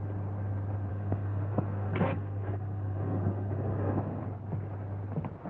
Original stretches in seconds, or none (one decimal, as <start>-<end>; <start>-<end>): 0.0-0.9; 4.2-5.5